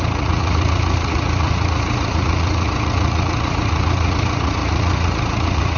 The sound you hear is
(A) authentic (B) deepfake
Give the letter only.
B